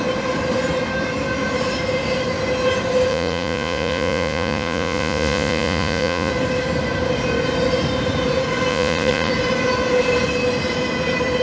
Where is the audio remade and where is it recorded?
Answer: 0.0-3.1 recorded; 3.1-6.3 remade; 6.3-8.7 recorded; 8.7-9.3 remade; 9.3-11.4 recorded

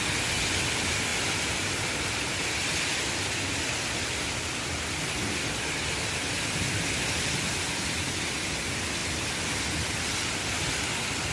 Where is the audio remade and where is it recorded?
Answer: 0.0-1.1 recorded; 1.1-3.6 remade; 3.6-9.0 recorded; 9.0-9.6 remade; 9.6-11.3 recorded

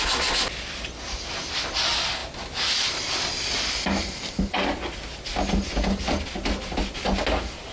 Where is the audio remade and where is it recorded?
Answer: 0.0-2.2 recorded; 2.2-4.3 remade; 4.3-7.7 recorded

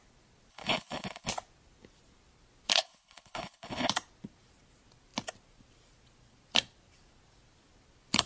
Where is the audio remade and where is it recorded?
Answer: 0.0-0.5 recorded; 0.5-1.3 remade; 1.3-2.7 recorded; 2.7-3.9 remade; 3.9-8.3 recorded

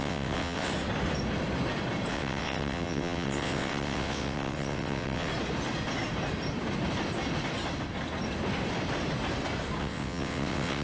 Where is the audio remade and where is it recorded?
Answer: 0.0-0.7 remade; 0.7-2.1 recorded; 2.1-5.3 remade; 5.3-9.8 recorded; 9.8-10.8 remade

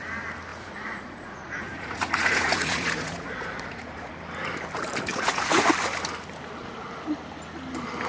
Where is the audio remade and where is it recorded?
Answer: 0.0-0.5 recorded; 0.5-4.1 remade; 4.1-5.1 recorded; 5.1-5.7 remade; 5.7-8.1 recorded

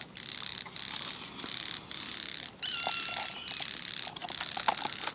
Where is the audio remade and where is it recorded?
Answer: 0.0-5.1 recorded